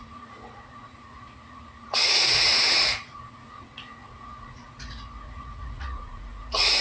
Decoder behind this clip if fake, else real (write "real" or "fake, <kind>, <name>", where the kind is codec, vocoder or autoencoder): fake, vocoder, Vocos